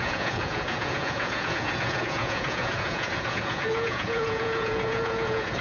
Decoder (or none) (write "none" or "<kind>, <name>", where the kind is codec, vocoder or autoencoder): vocoder, Vocos